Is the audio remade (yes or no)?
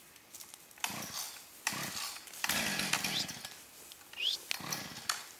no